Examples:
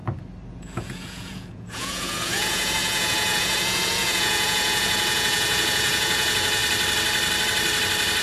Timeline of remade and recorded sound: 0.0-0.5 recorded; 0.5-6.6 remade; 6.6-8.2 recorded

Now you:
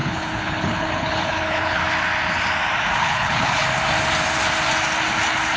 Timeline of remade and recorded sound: 0.0-1.8 remade; 1.8-3.0 recorded; 3.0-3.6 remade; 3.6-5.6 recorded

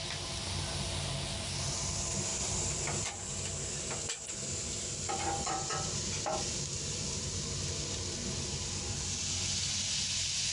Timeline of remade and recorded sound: 0.0-2.3 recorded; 2.3-7.2 remade; 7.2-10.5 recorded

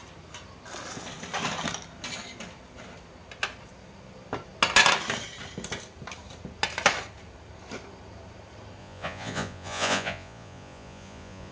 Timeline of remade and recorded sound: 0.0-8.8 recorded; 8.8-11.5 remade

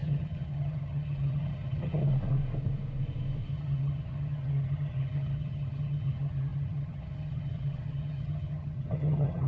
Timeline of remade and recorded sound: 0.0-2.0 remade; 2.0-3.5 recorded; 3.5-9.5 remade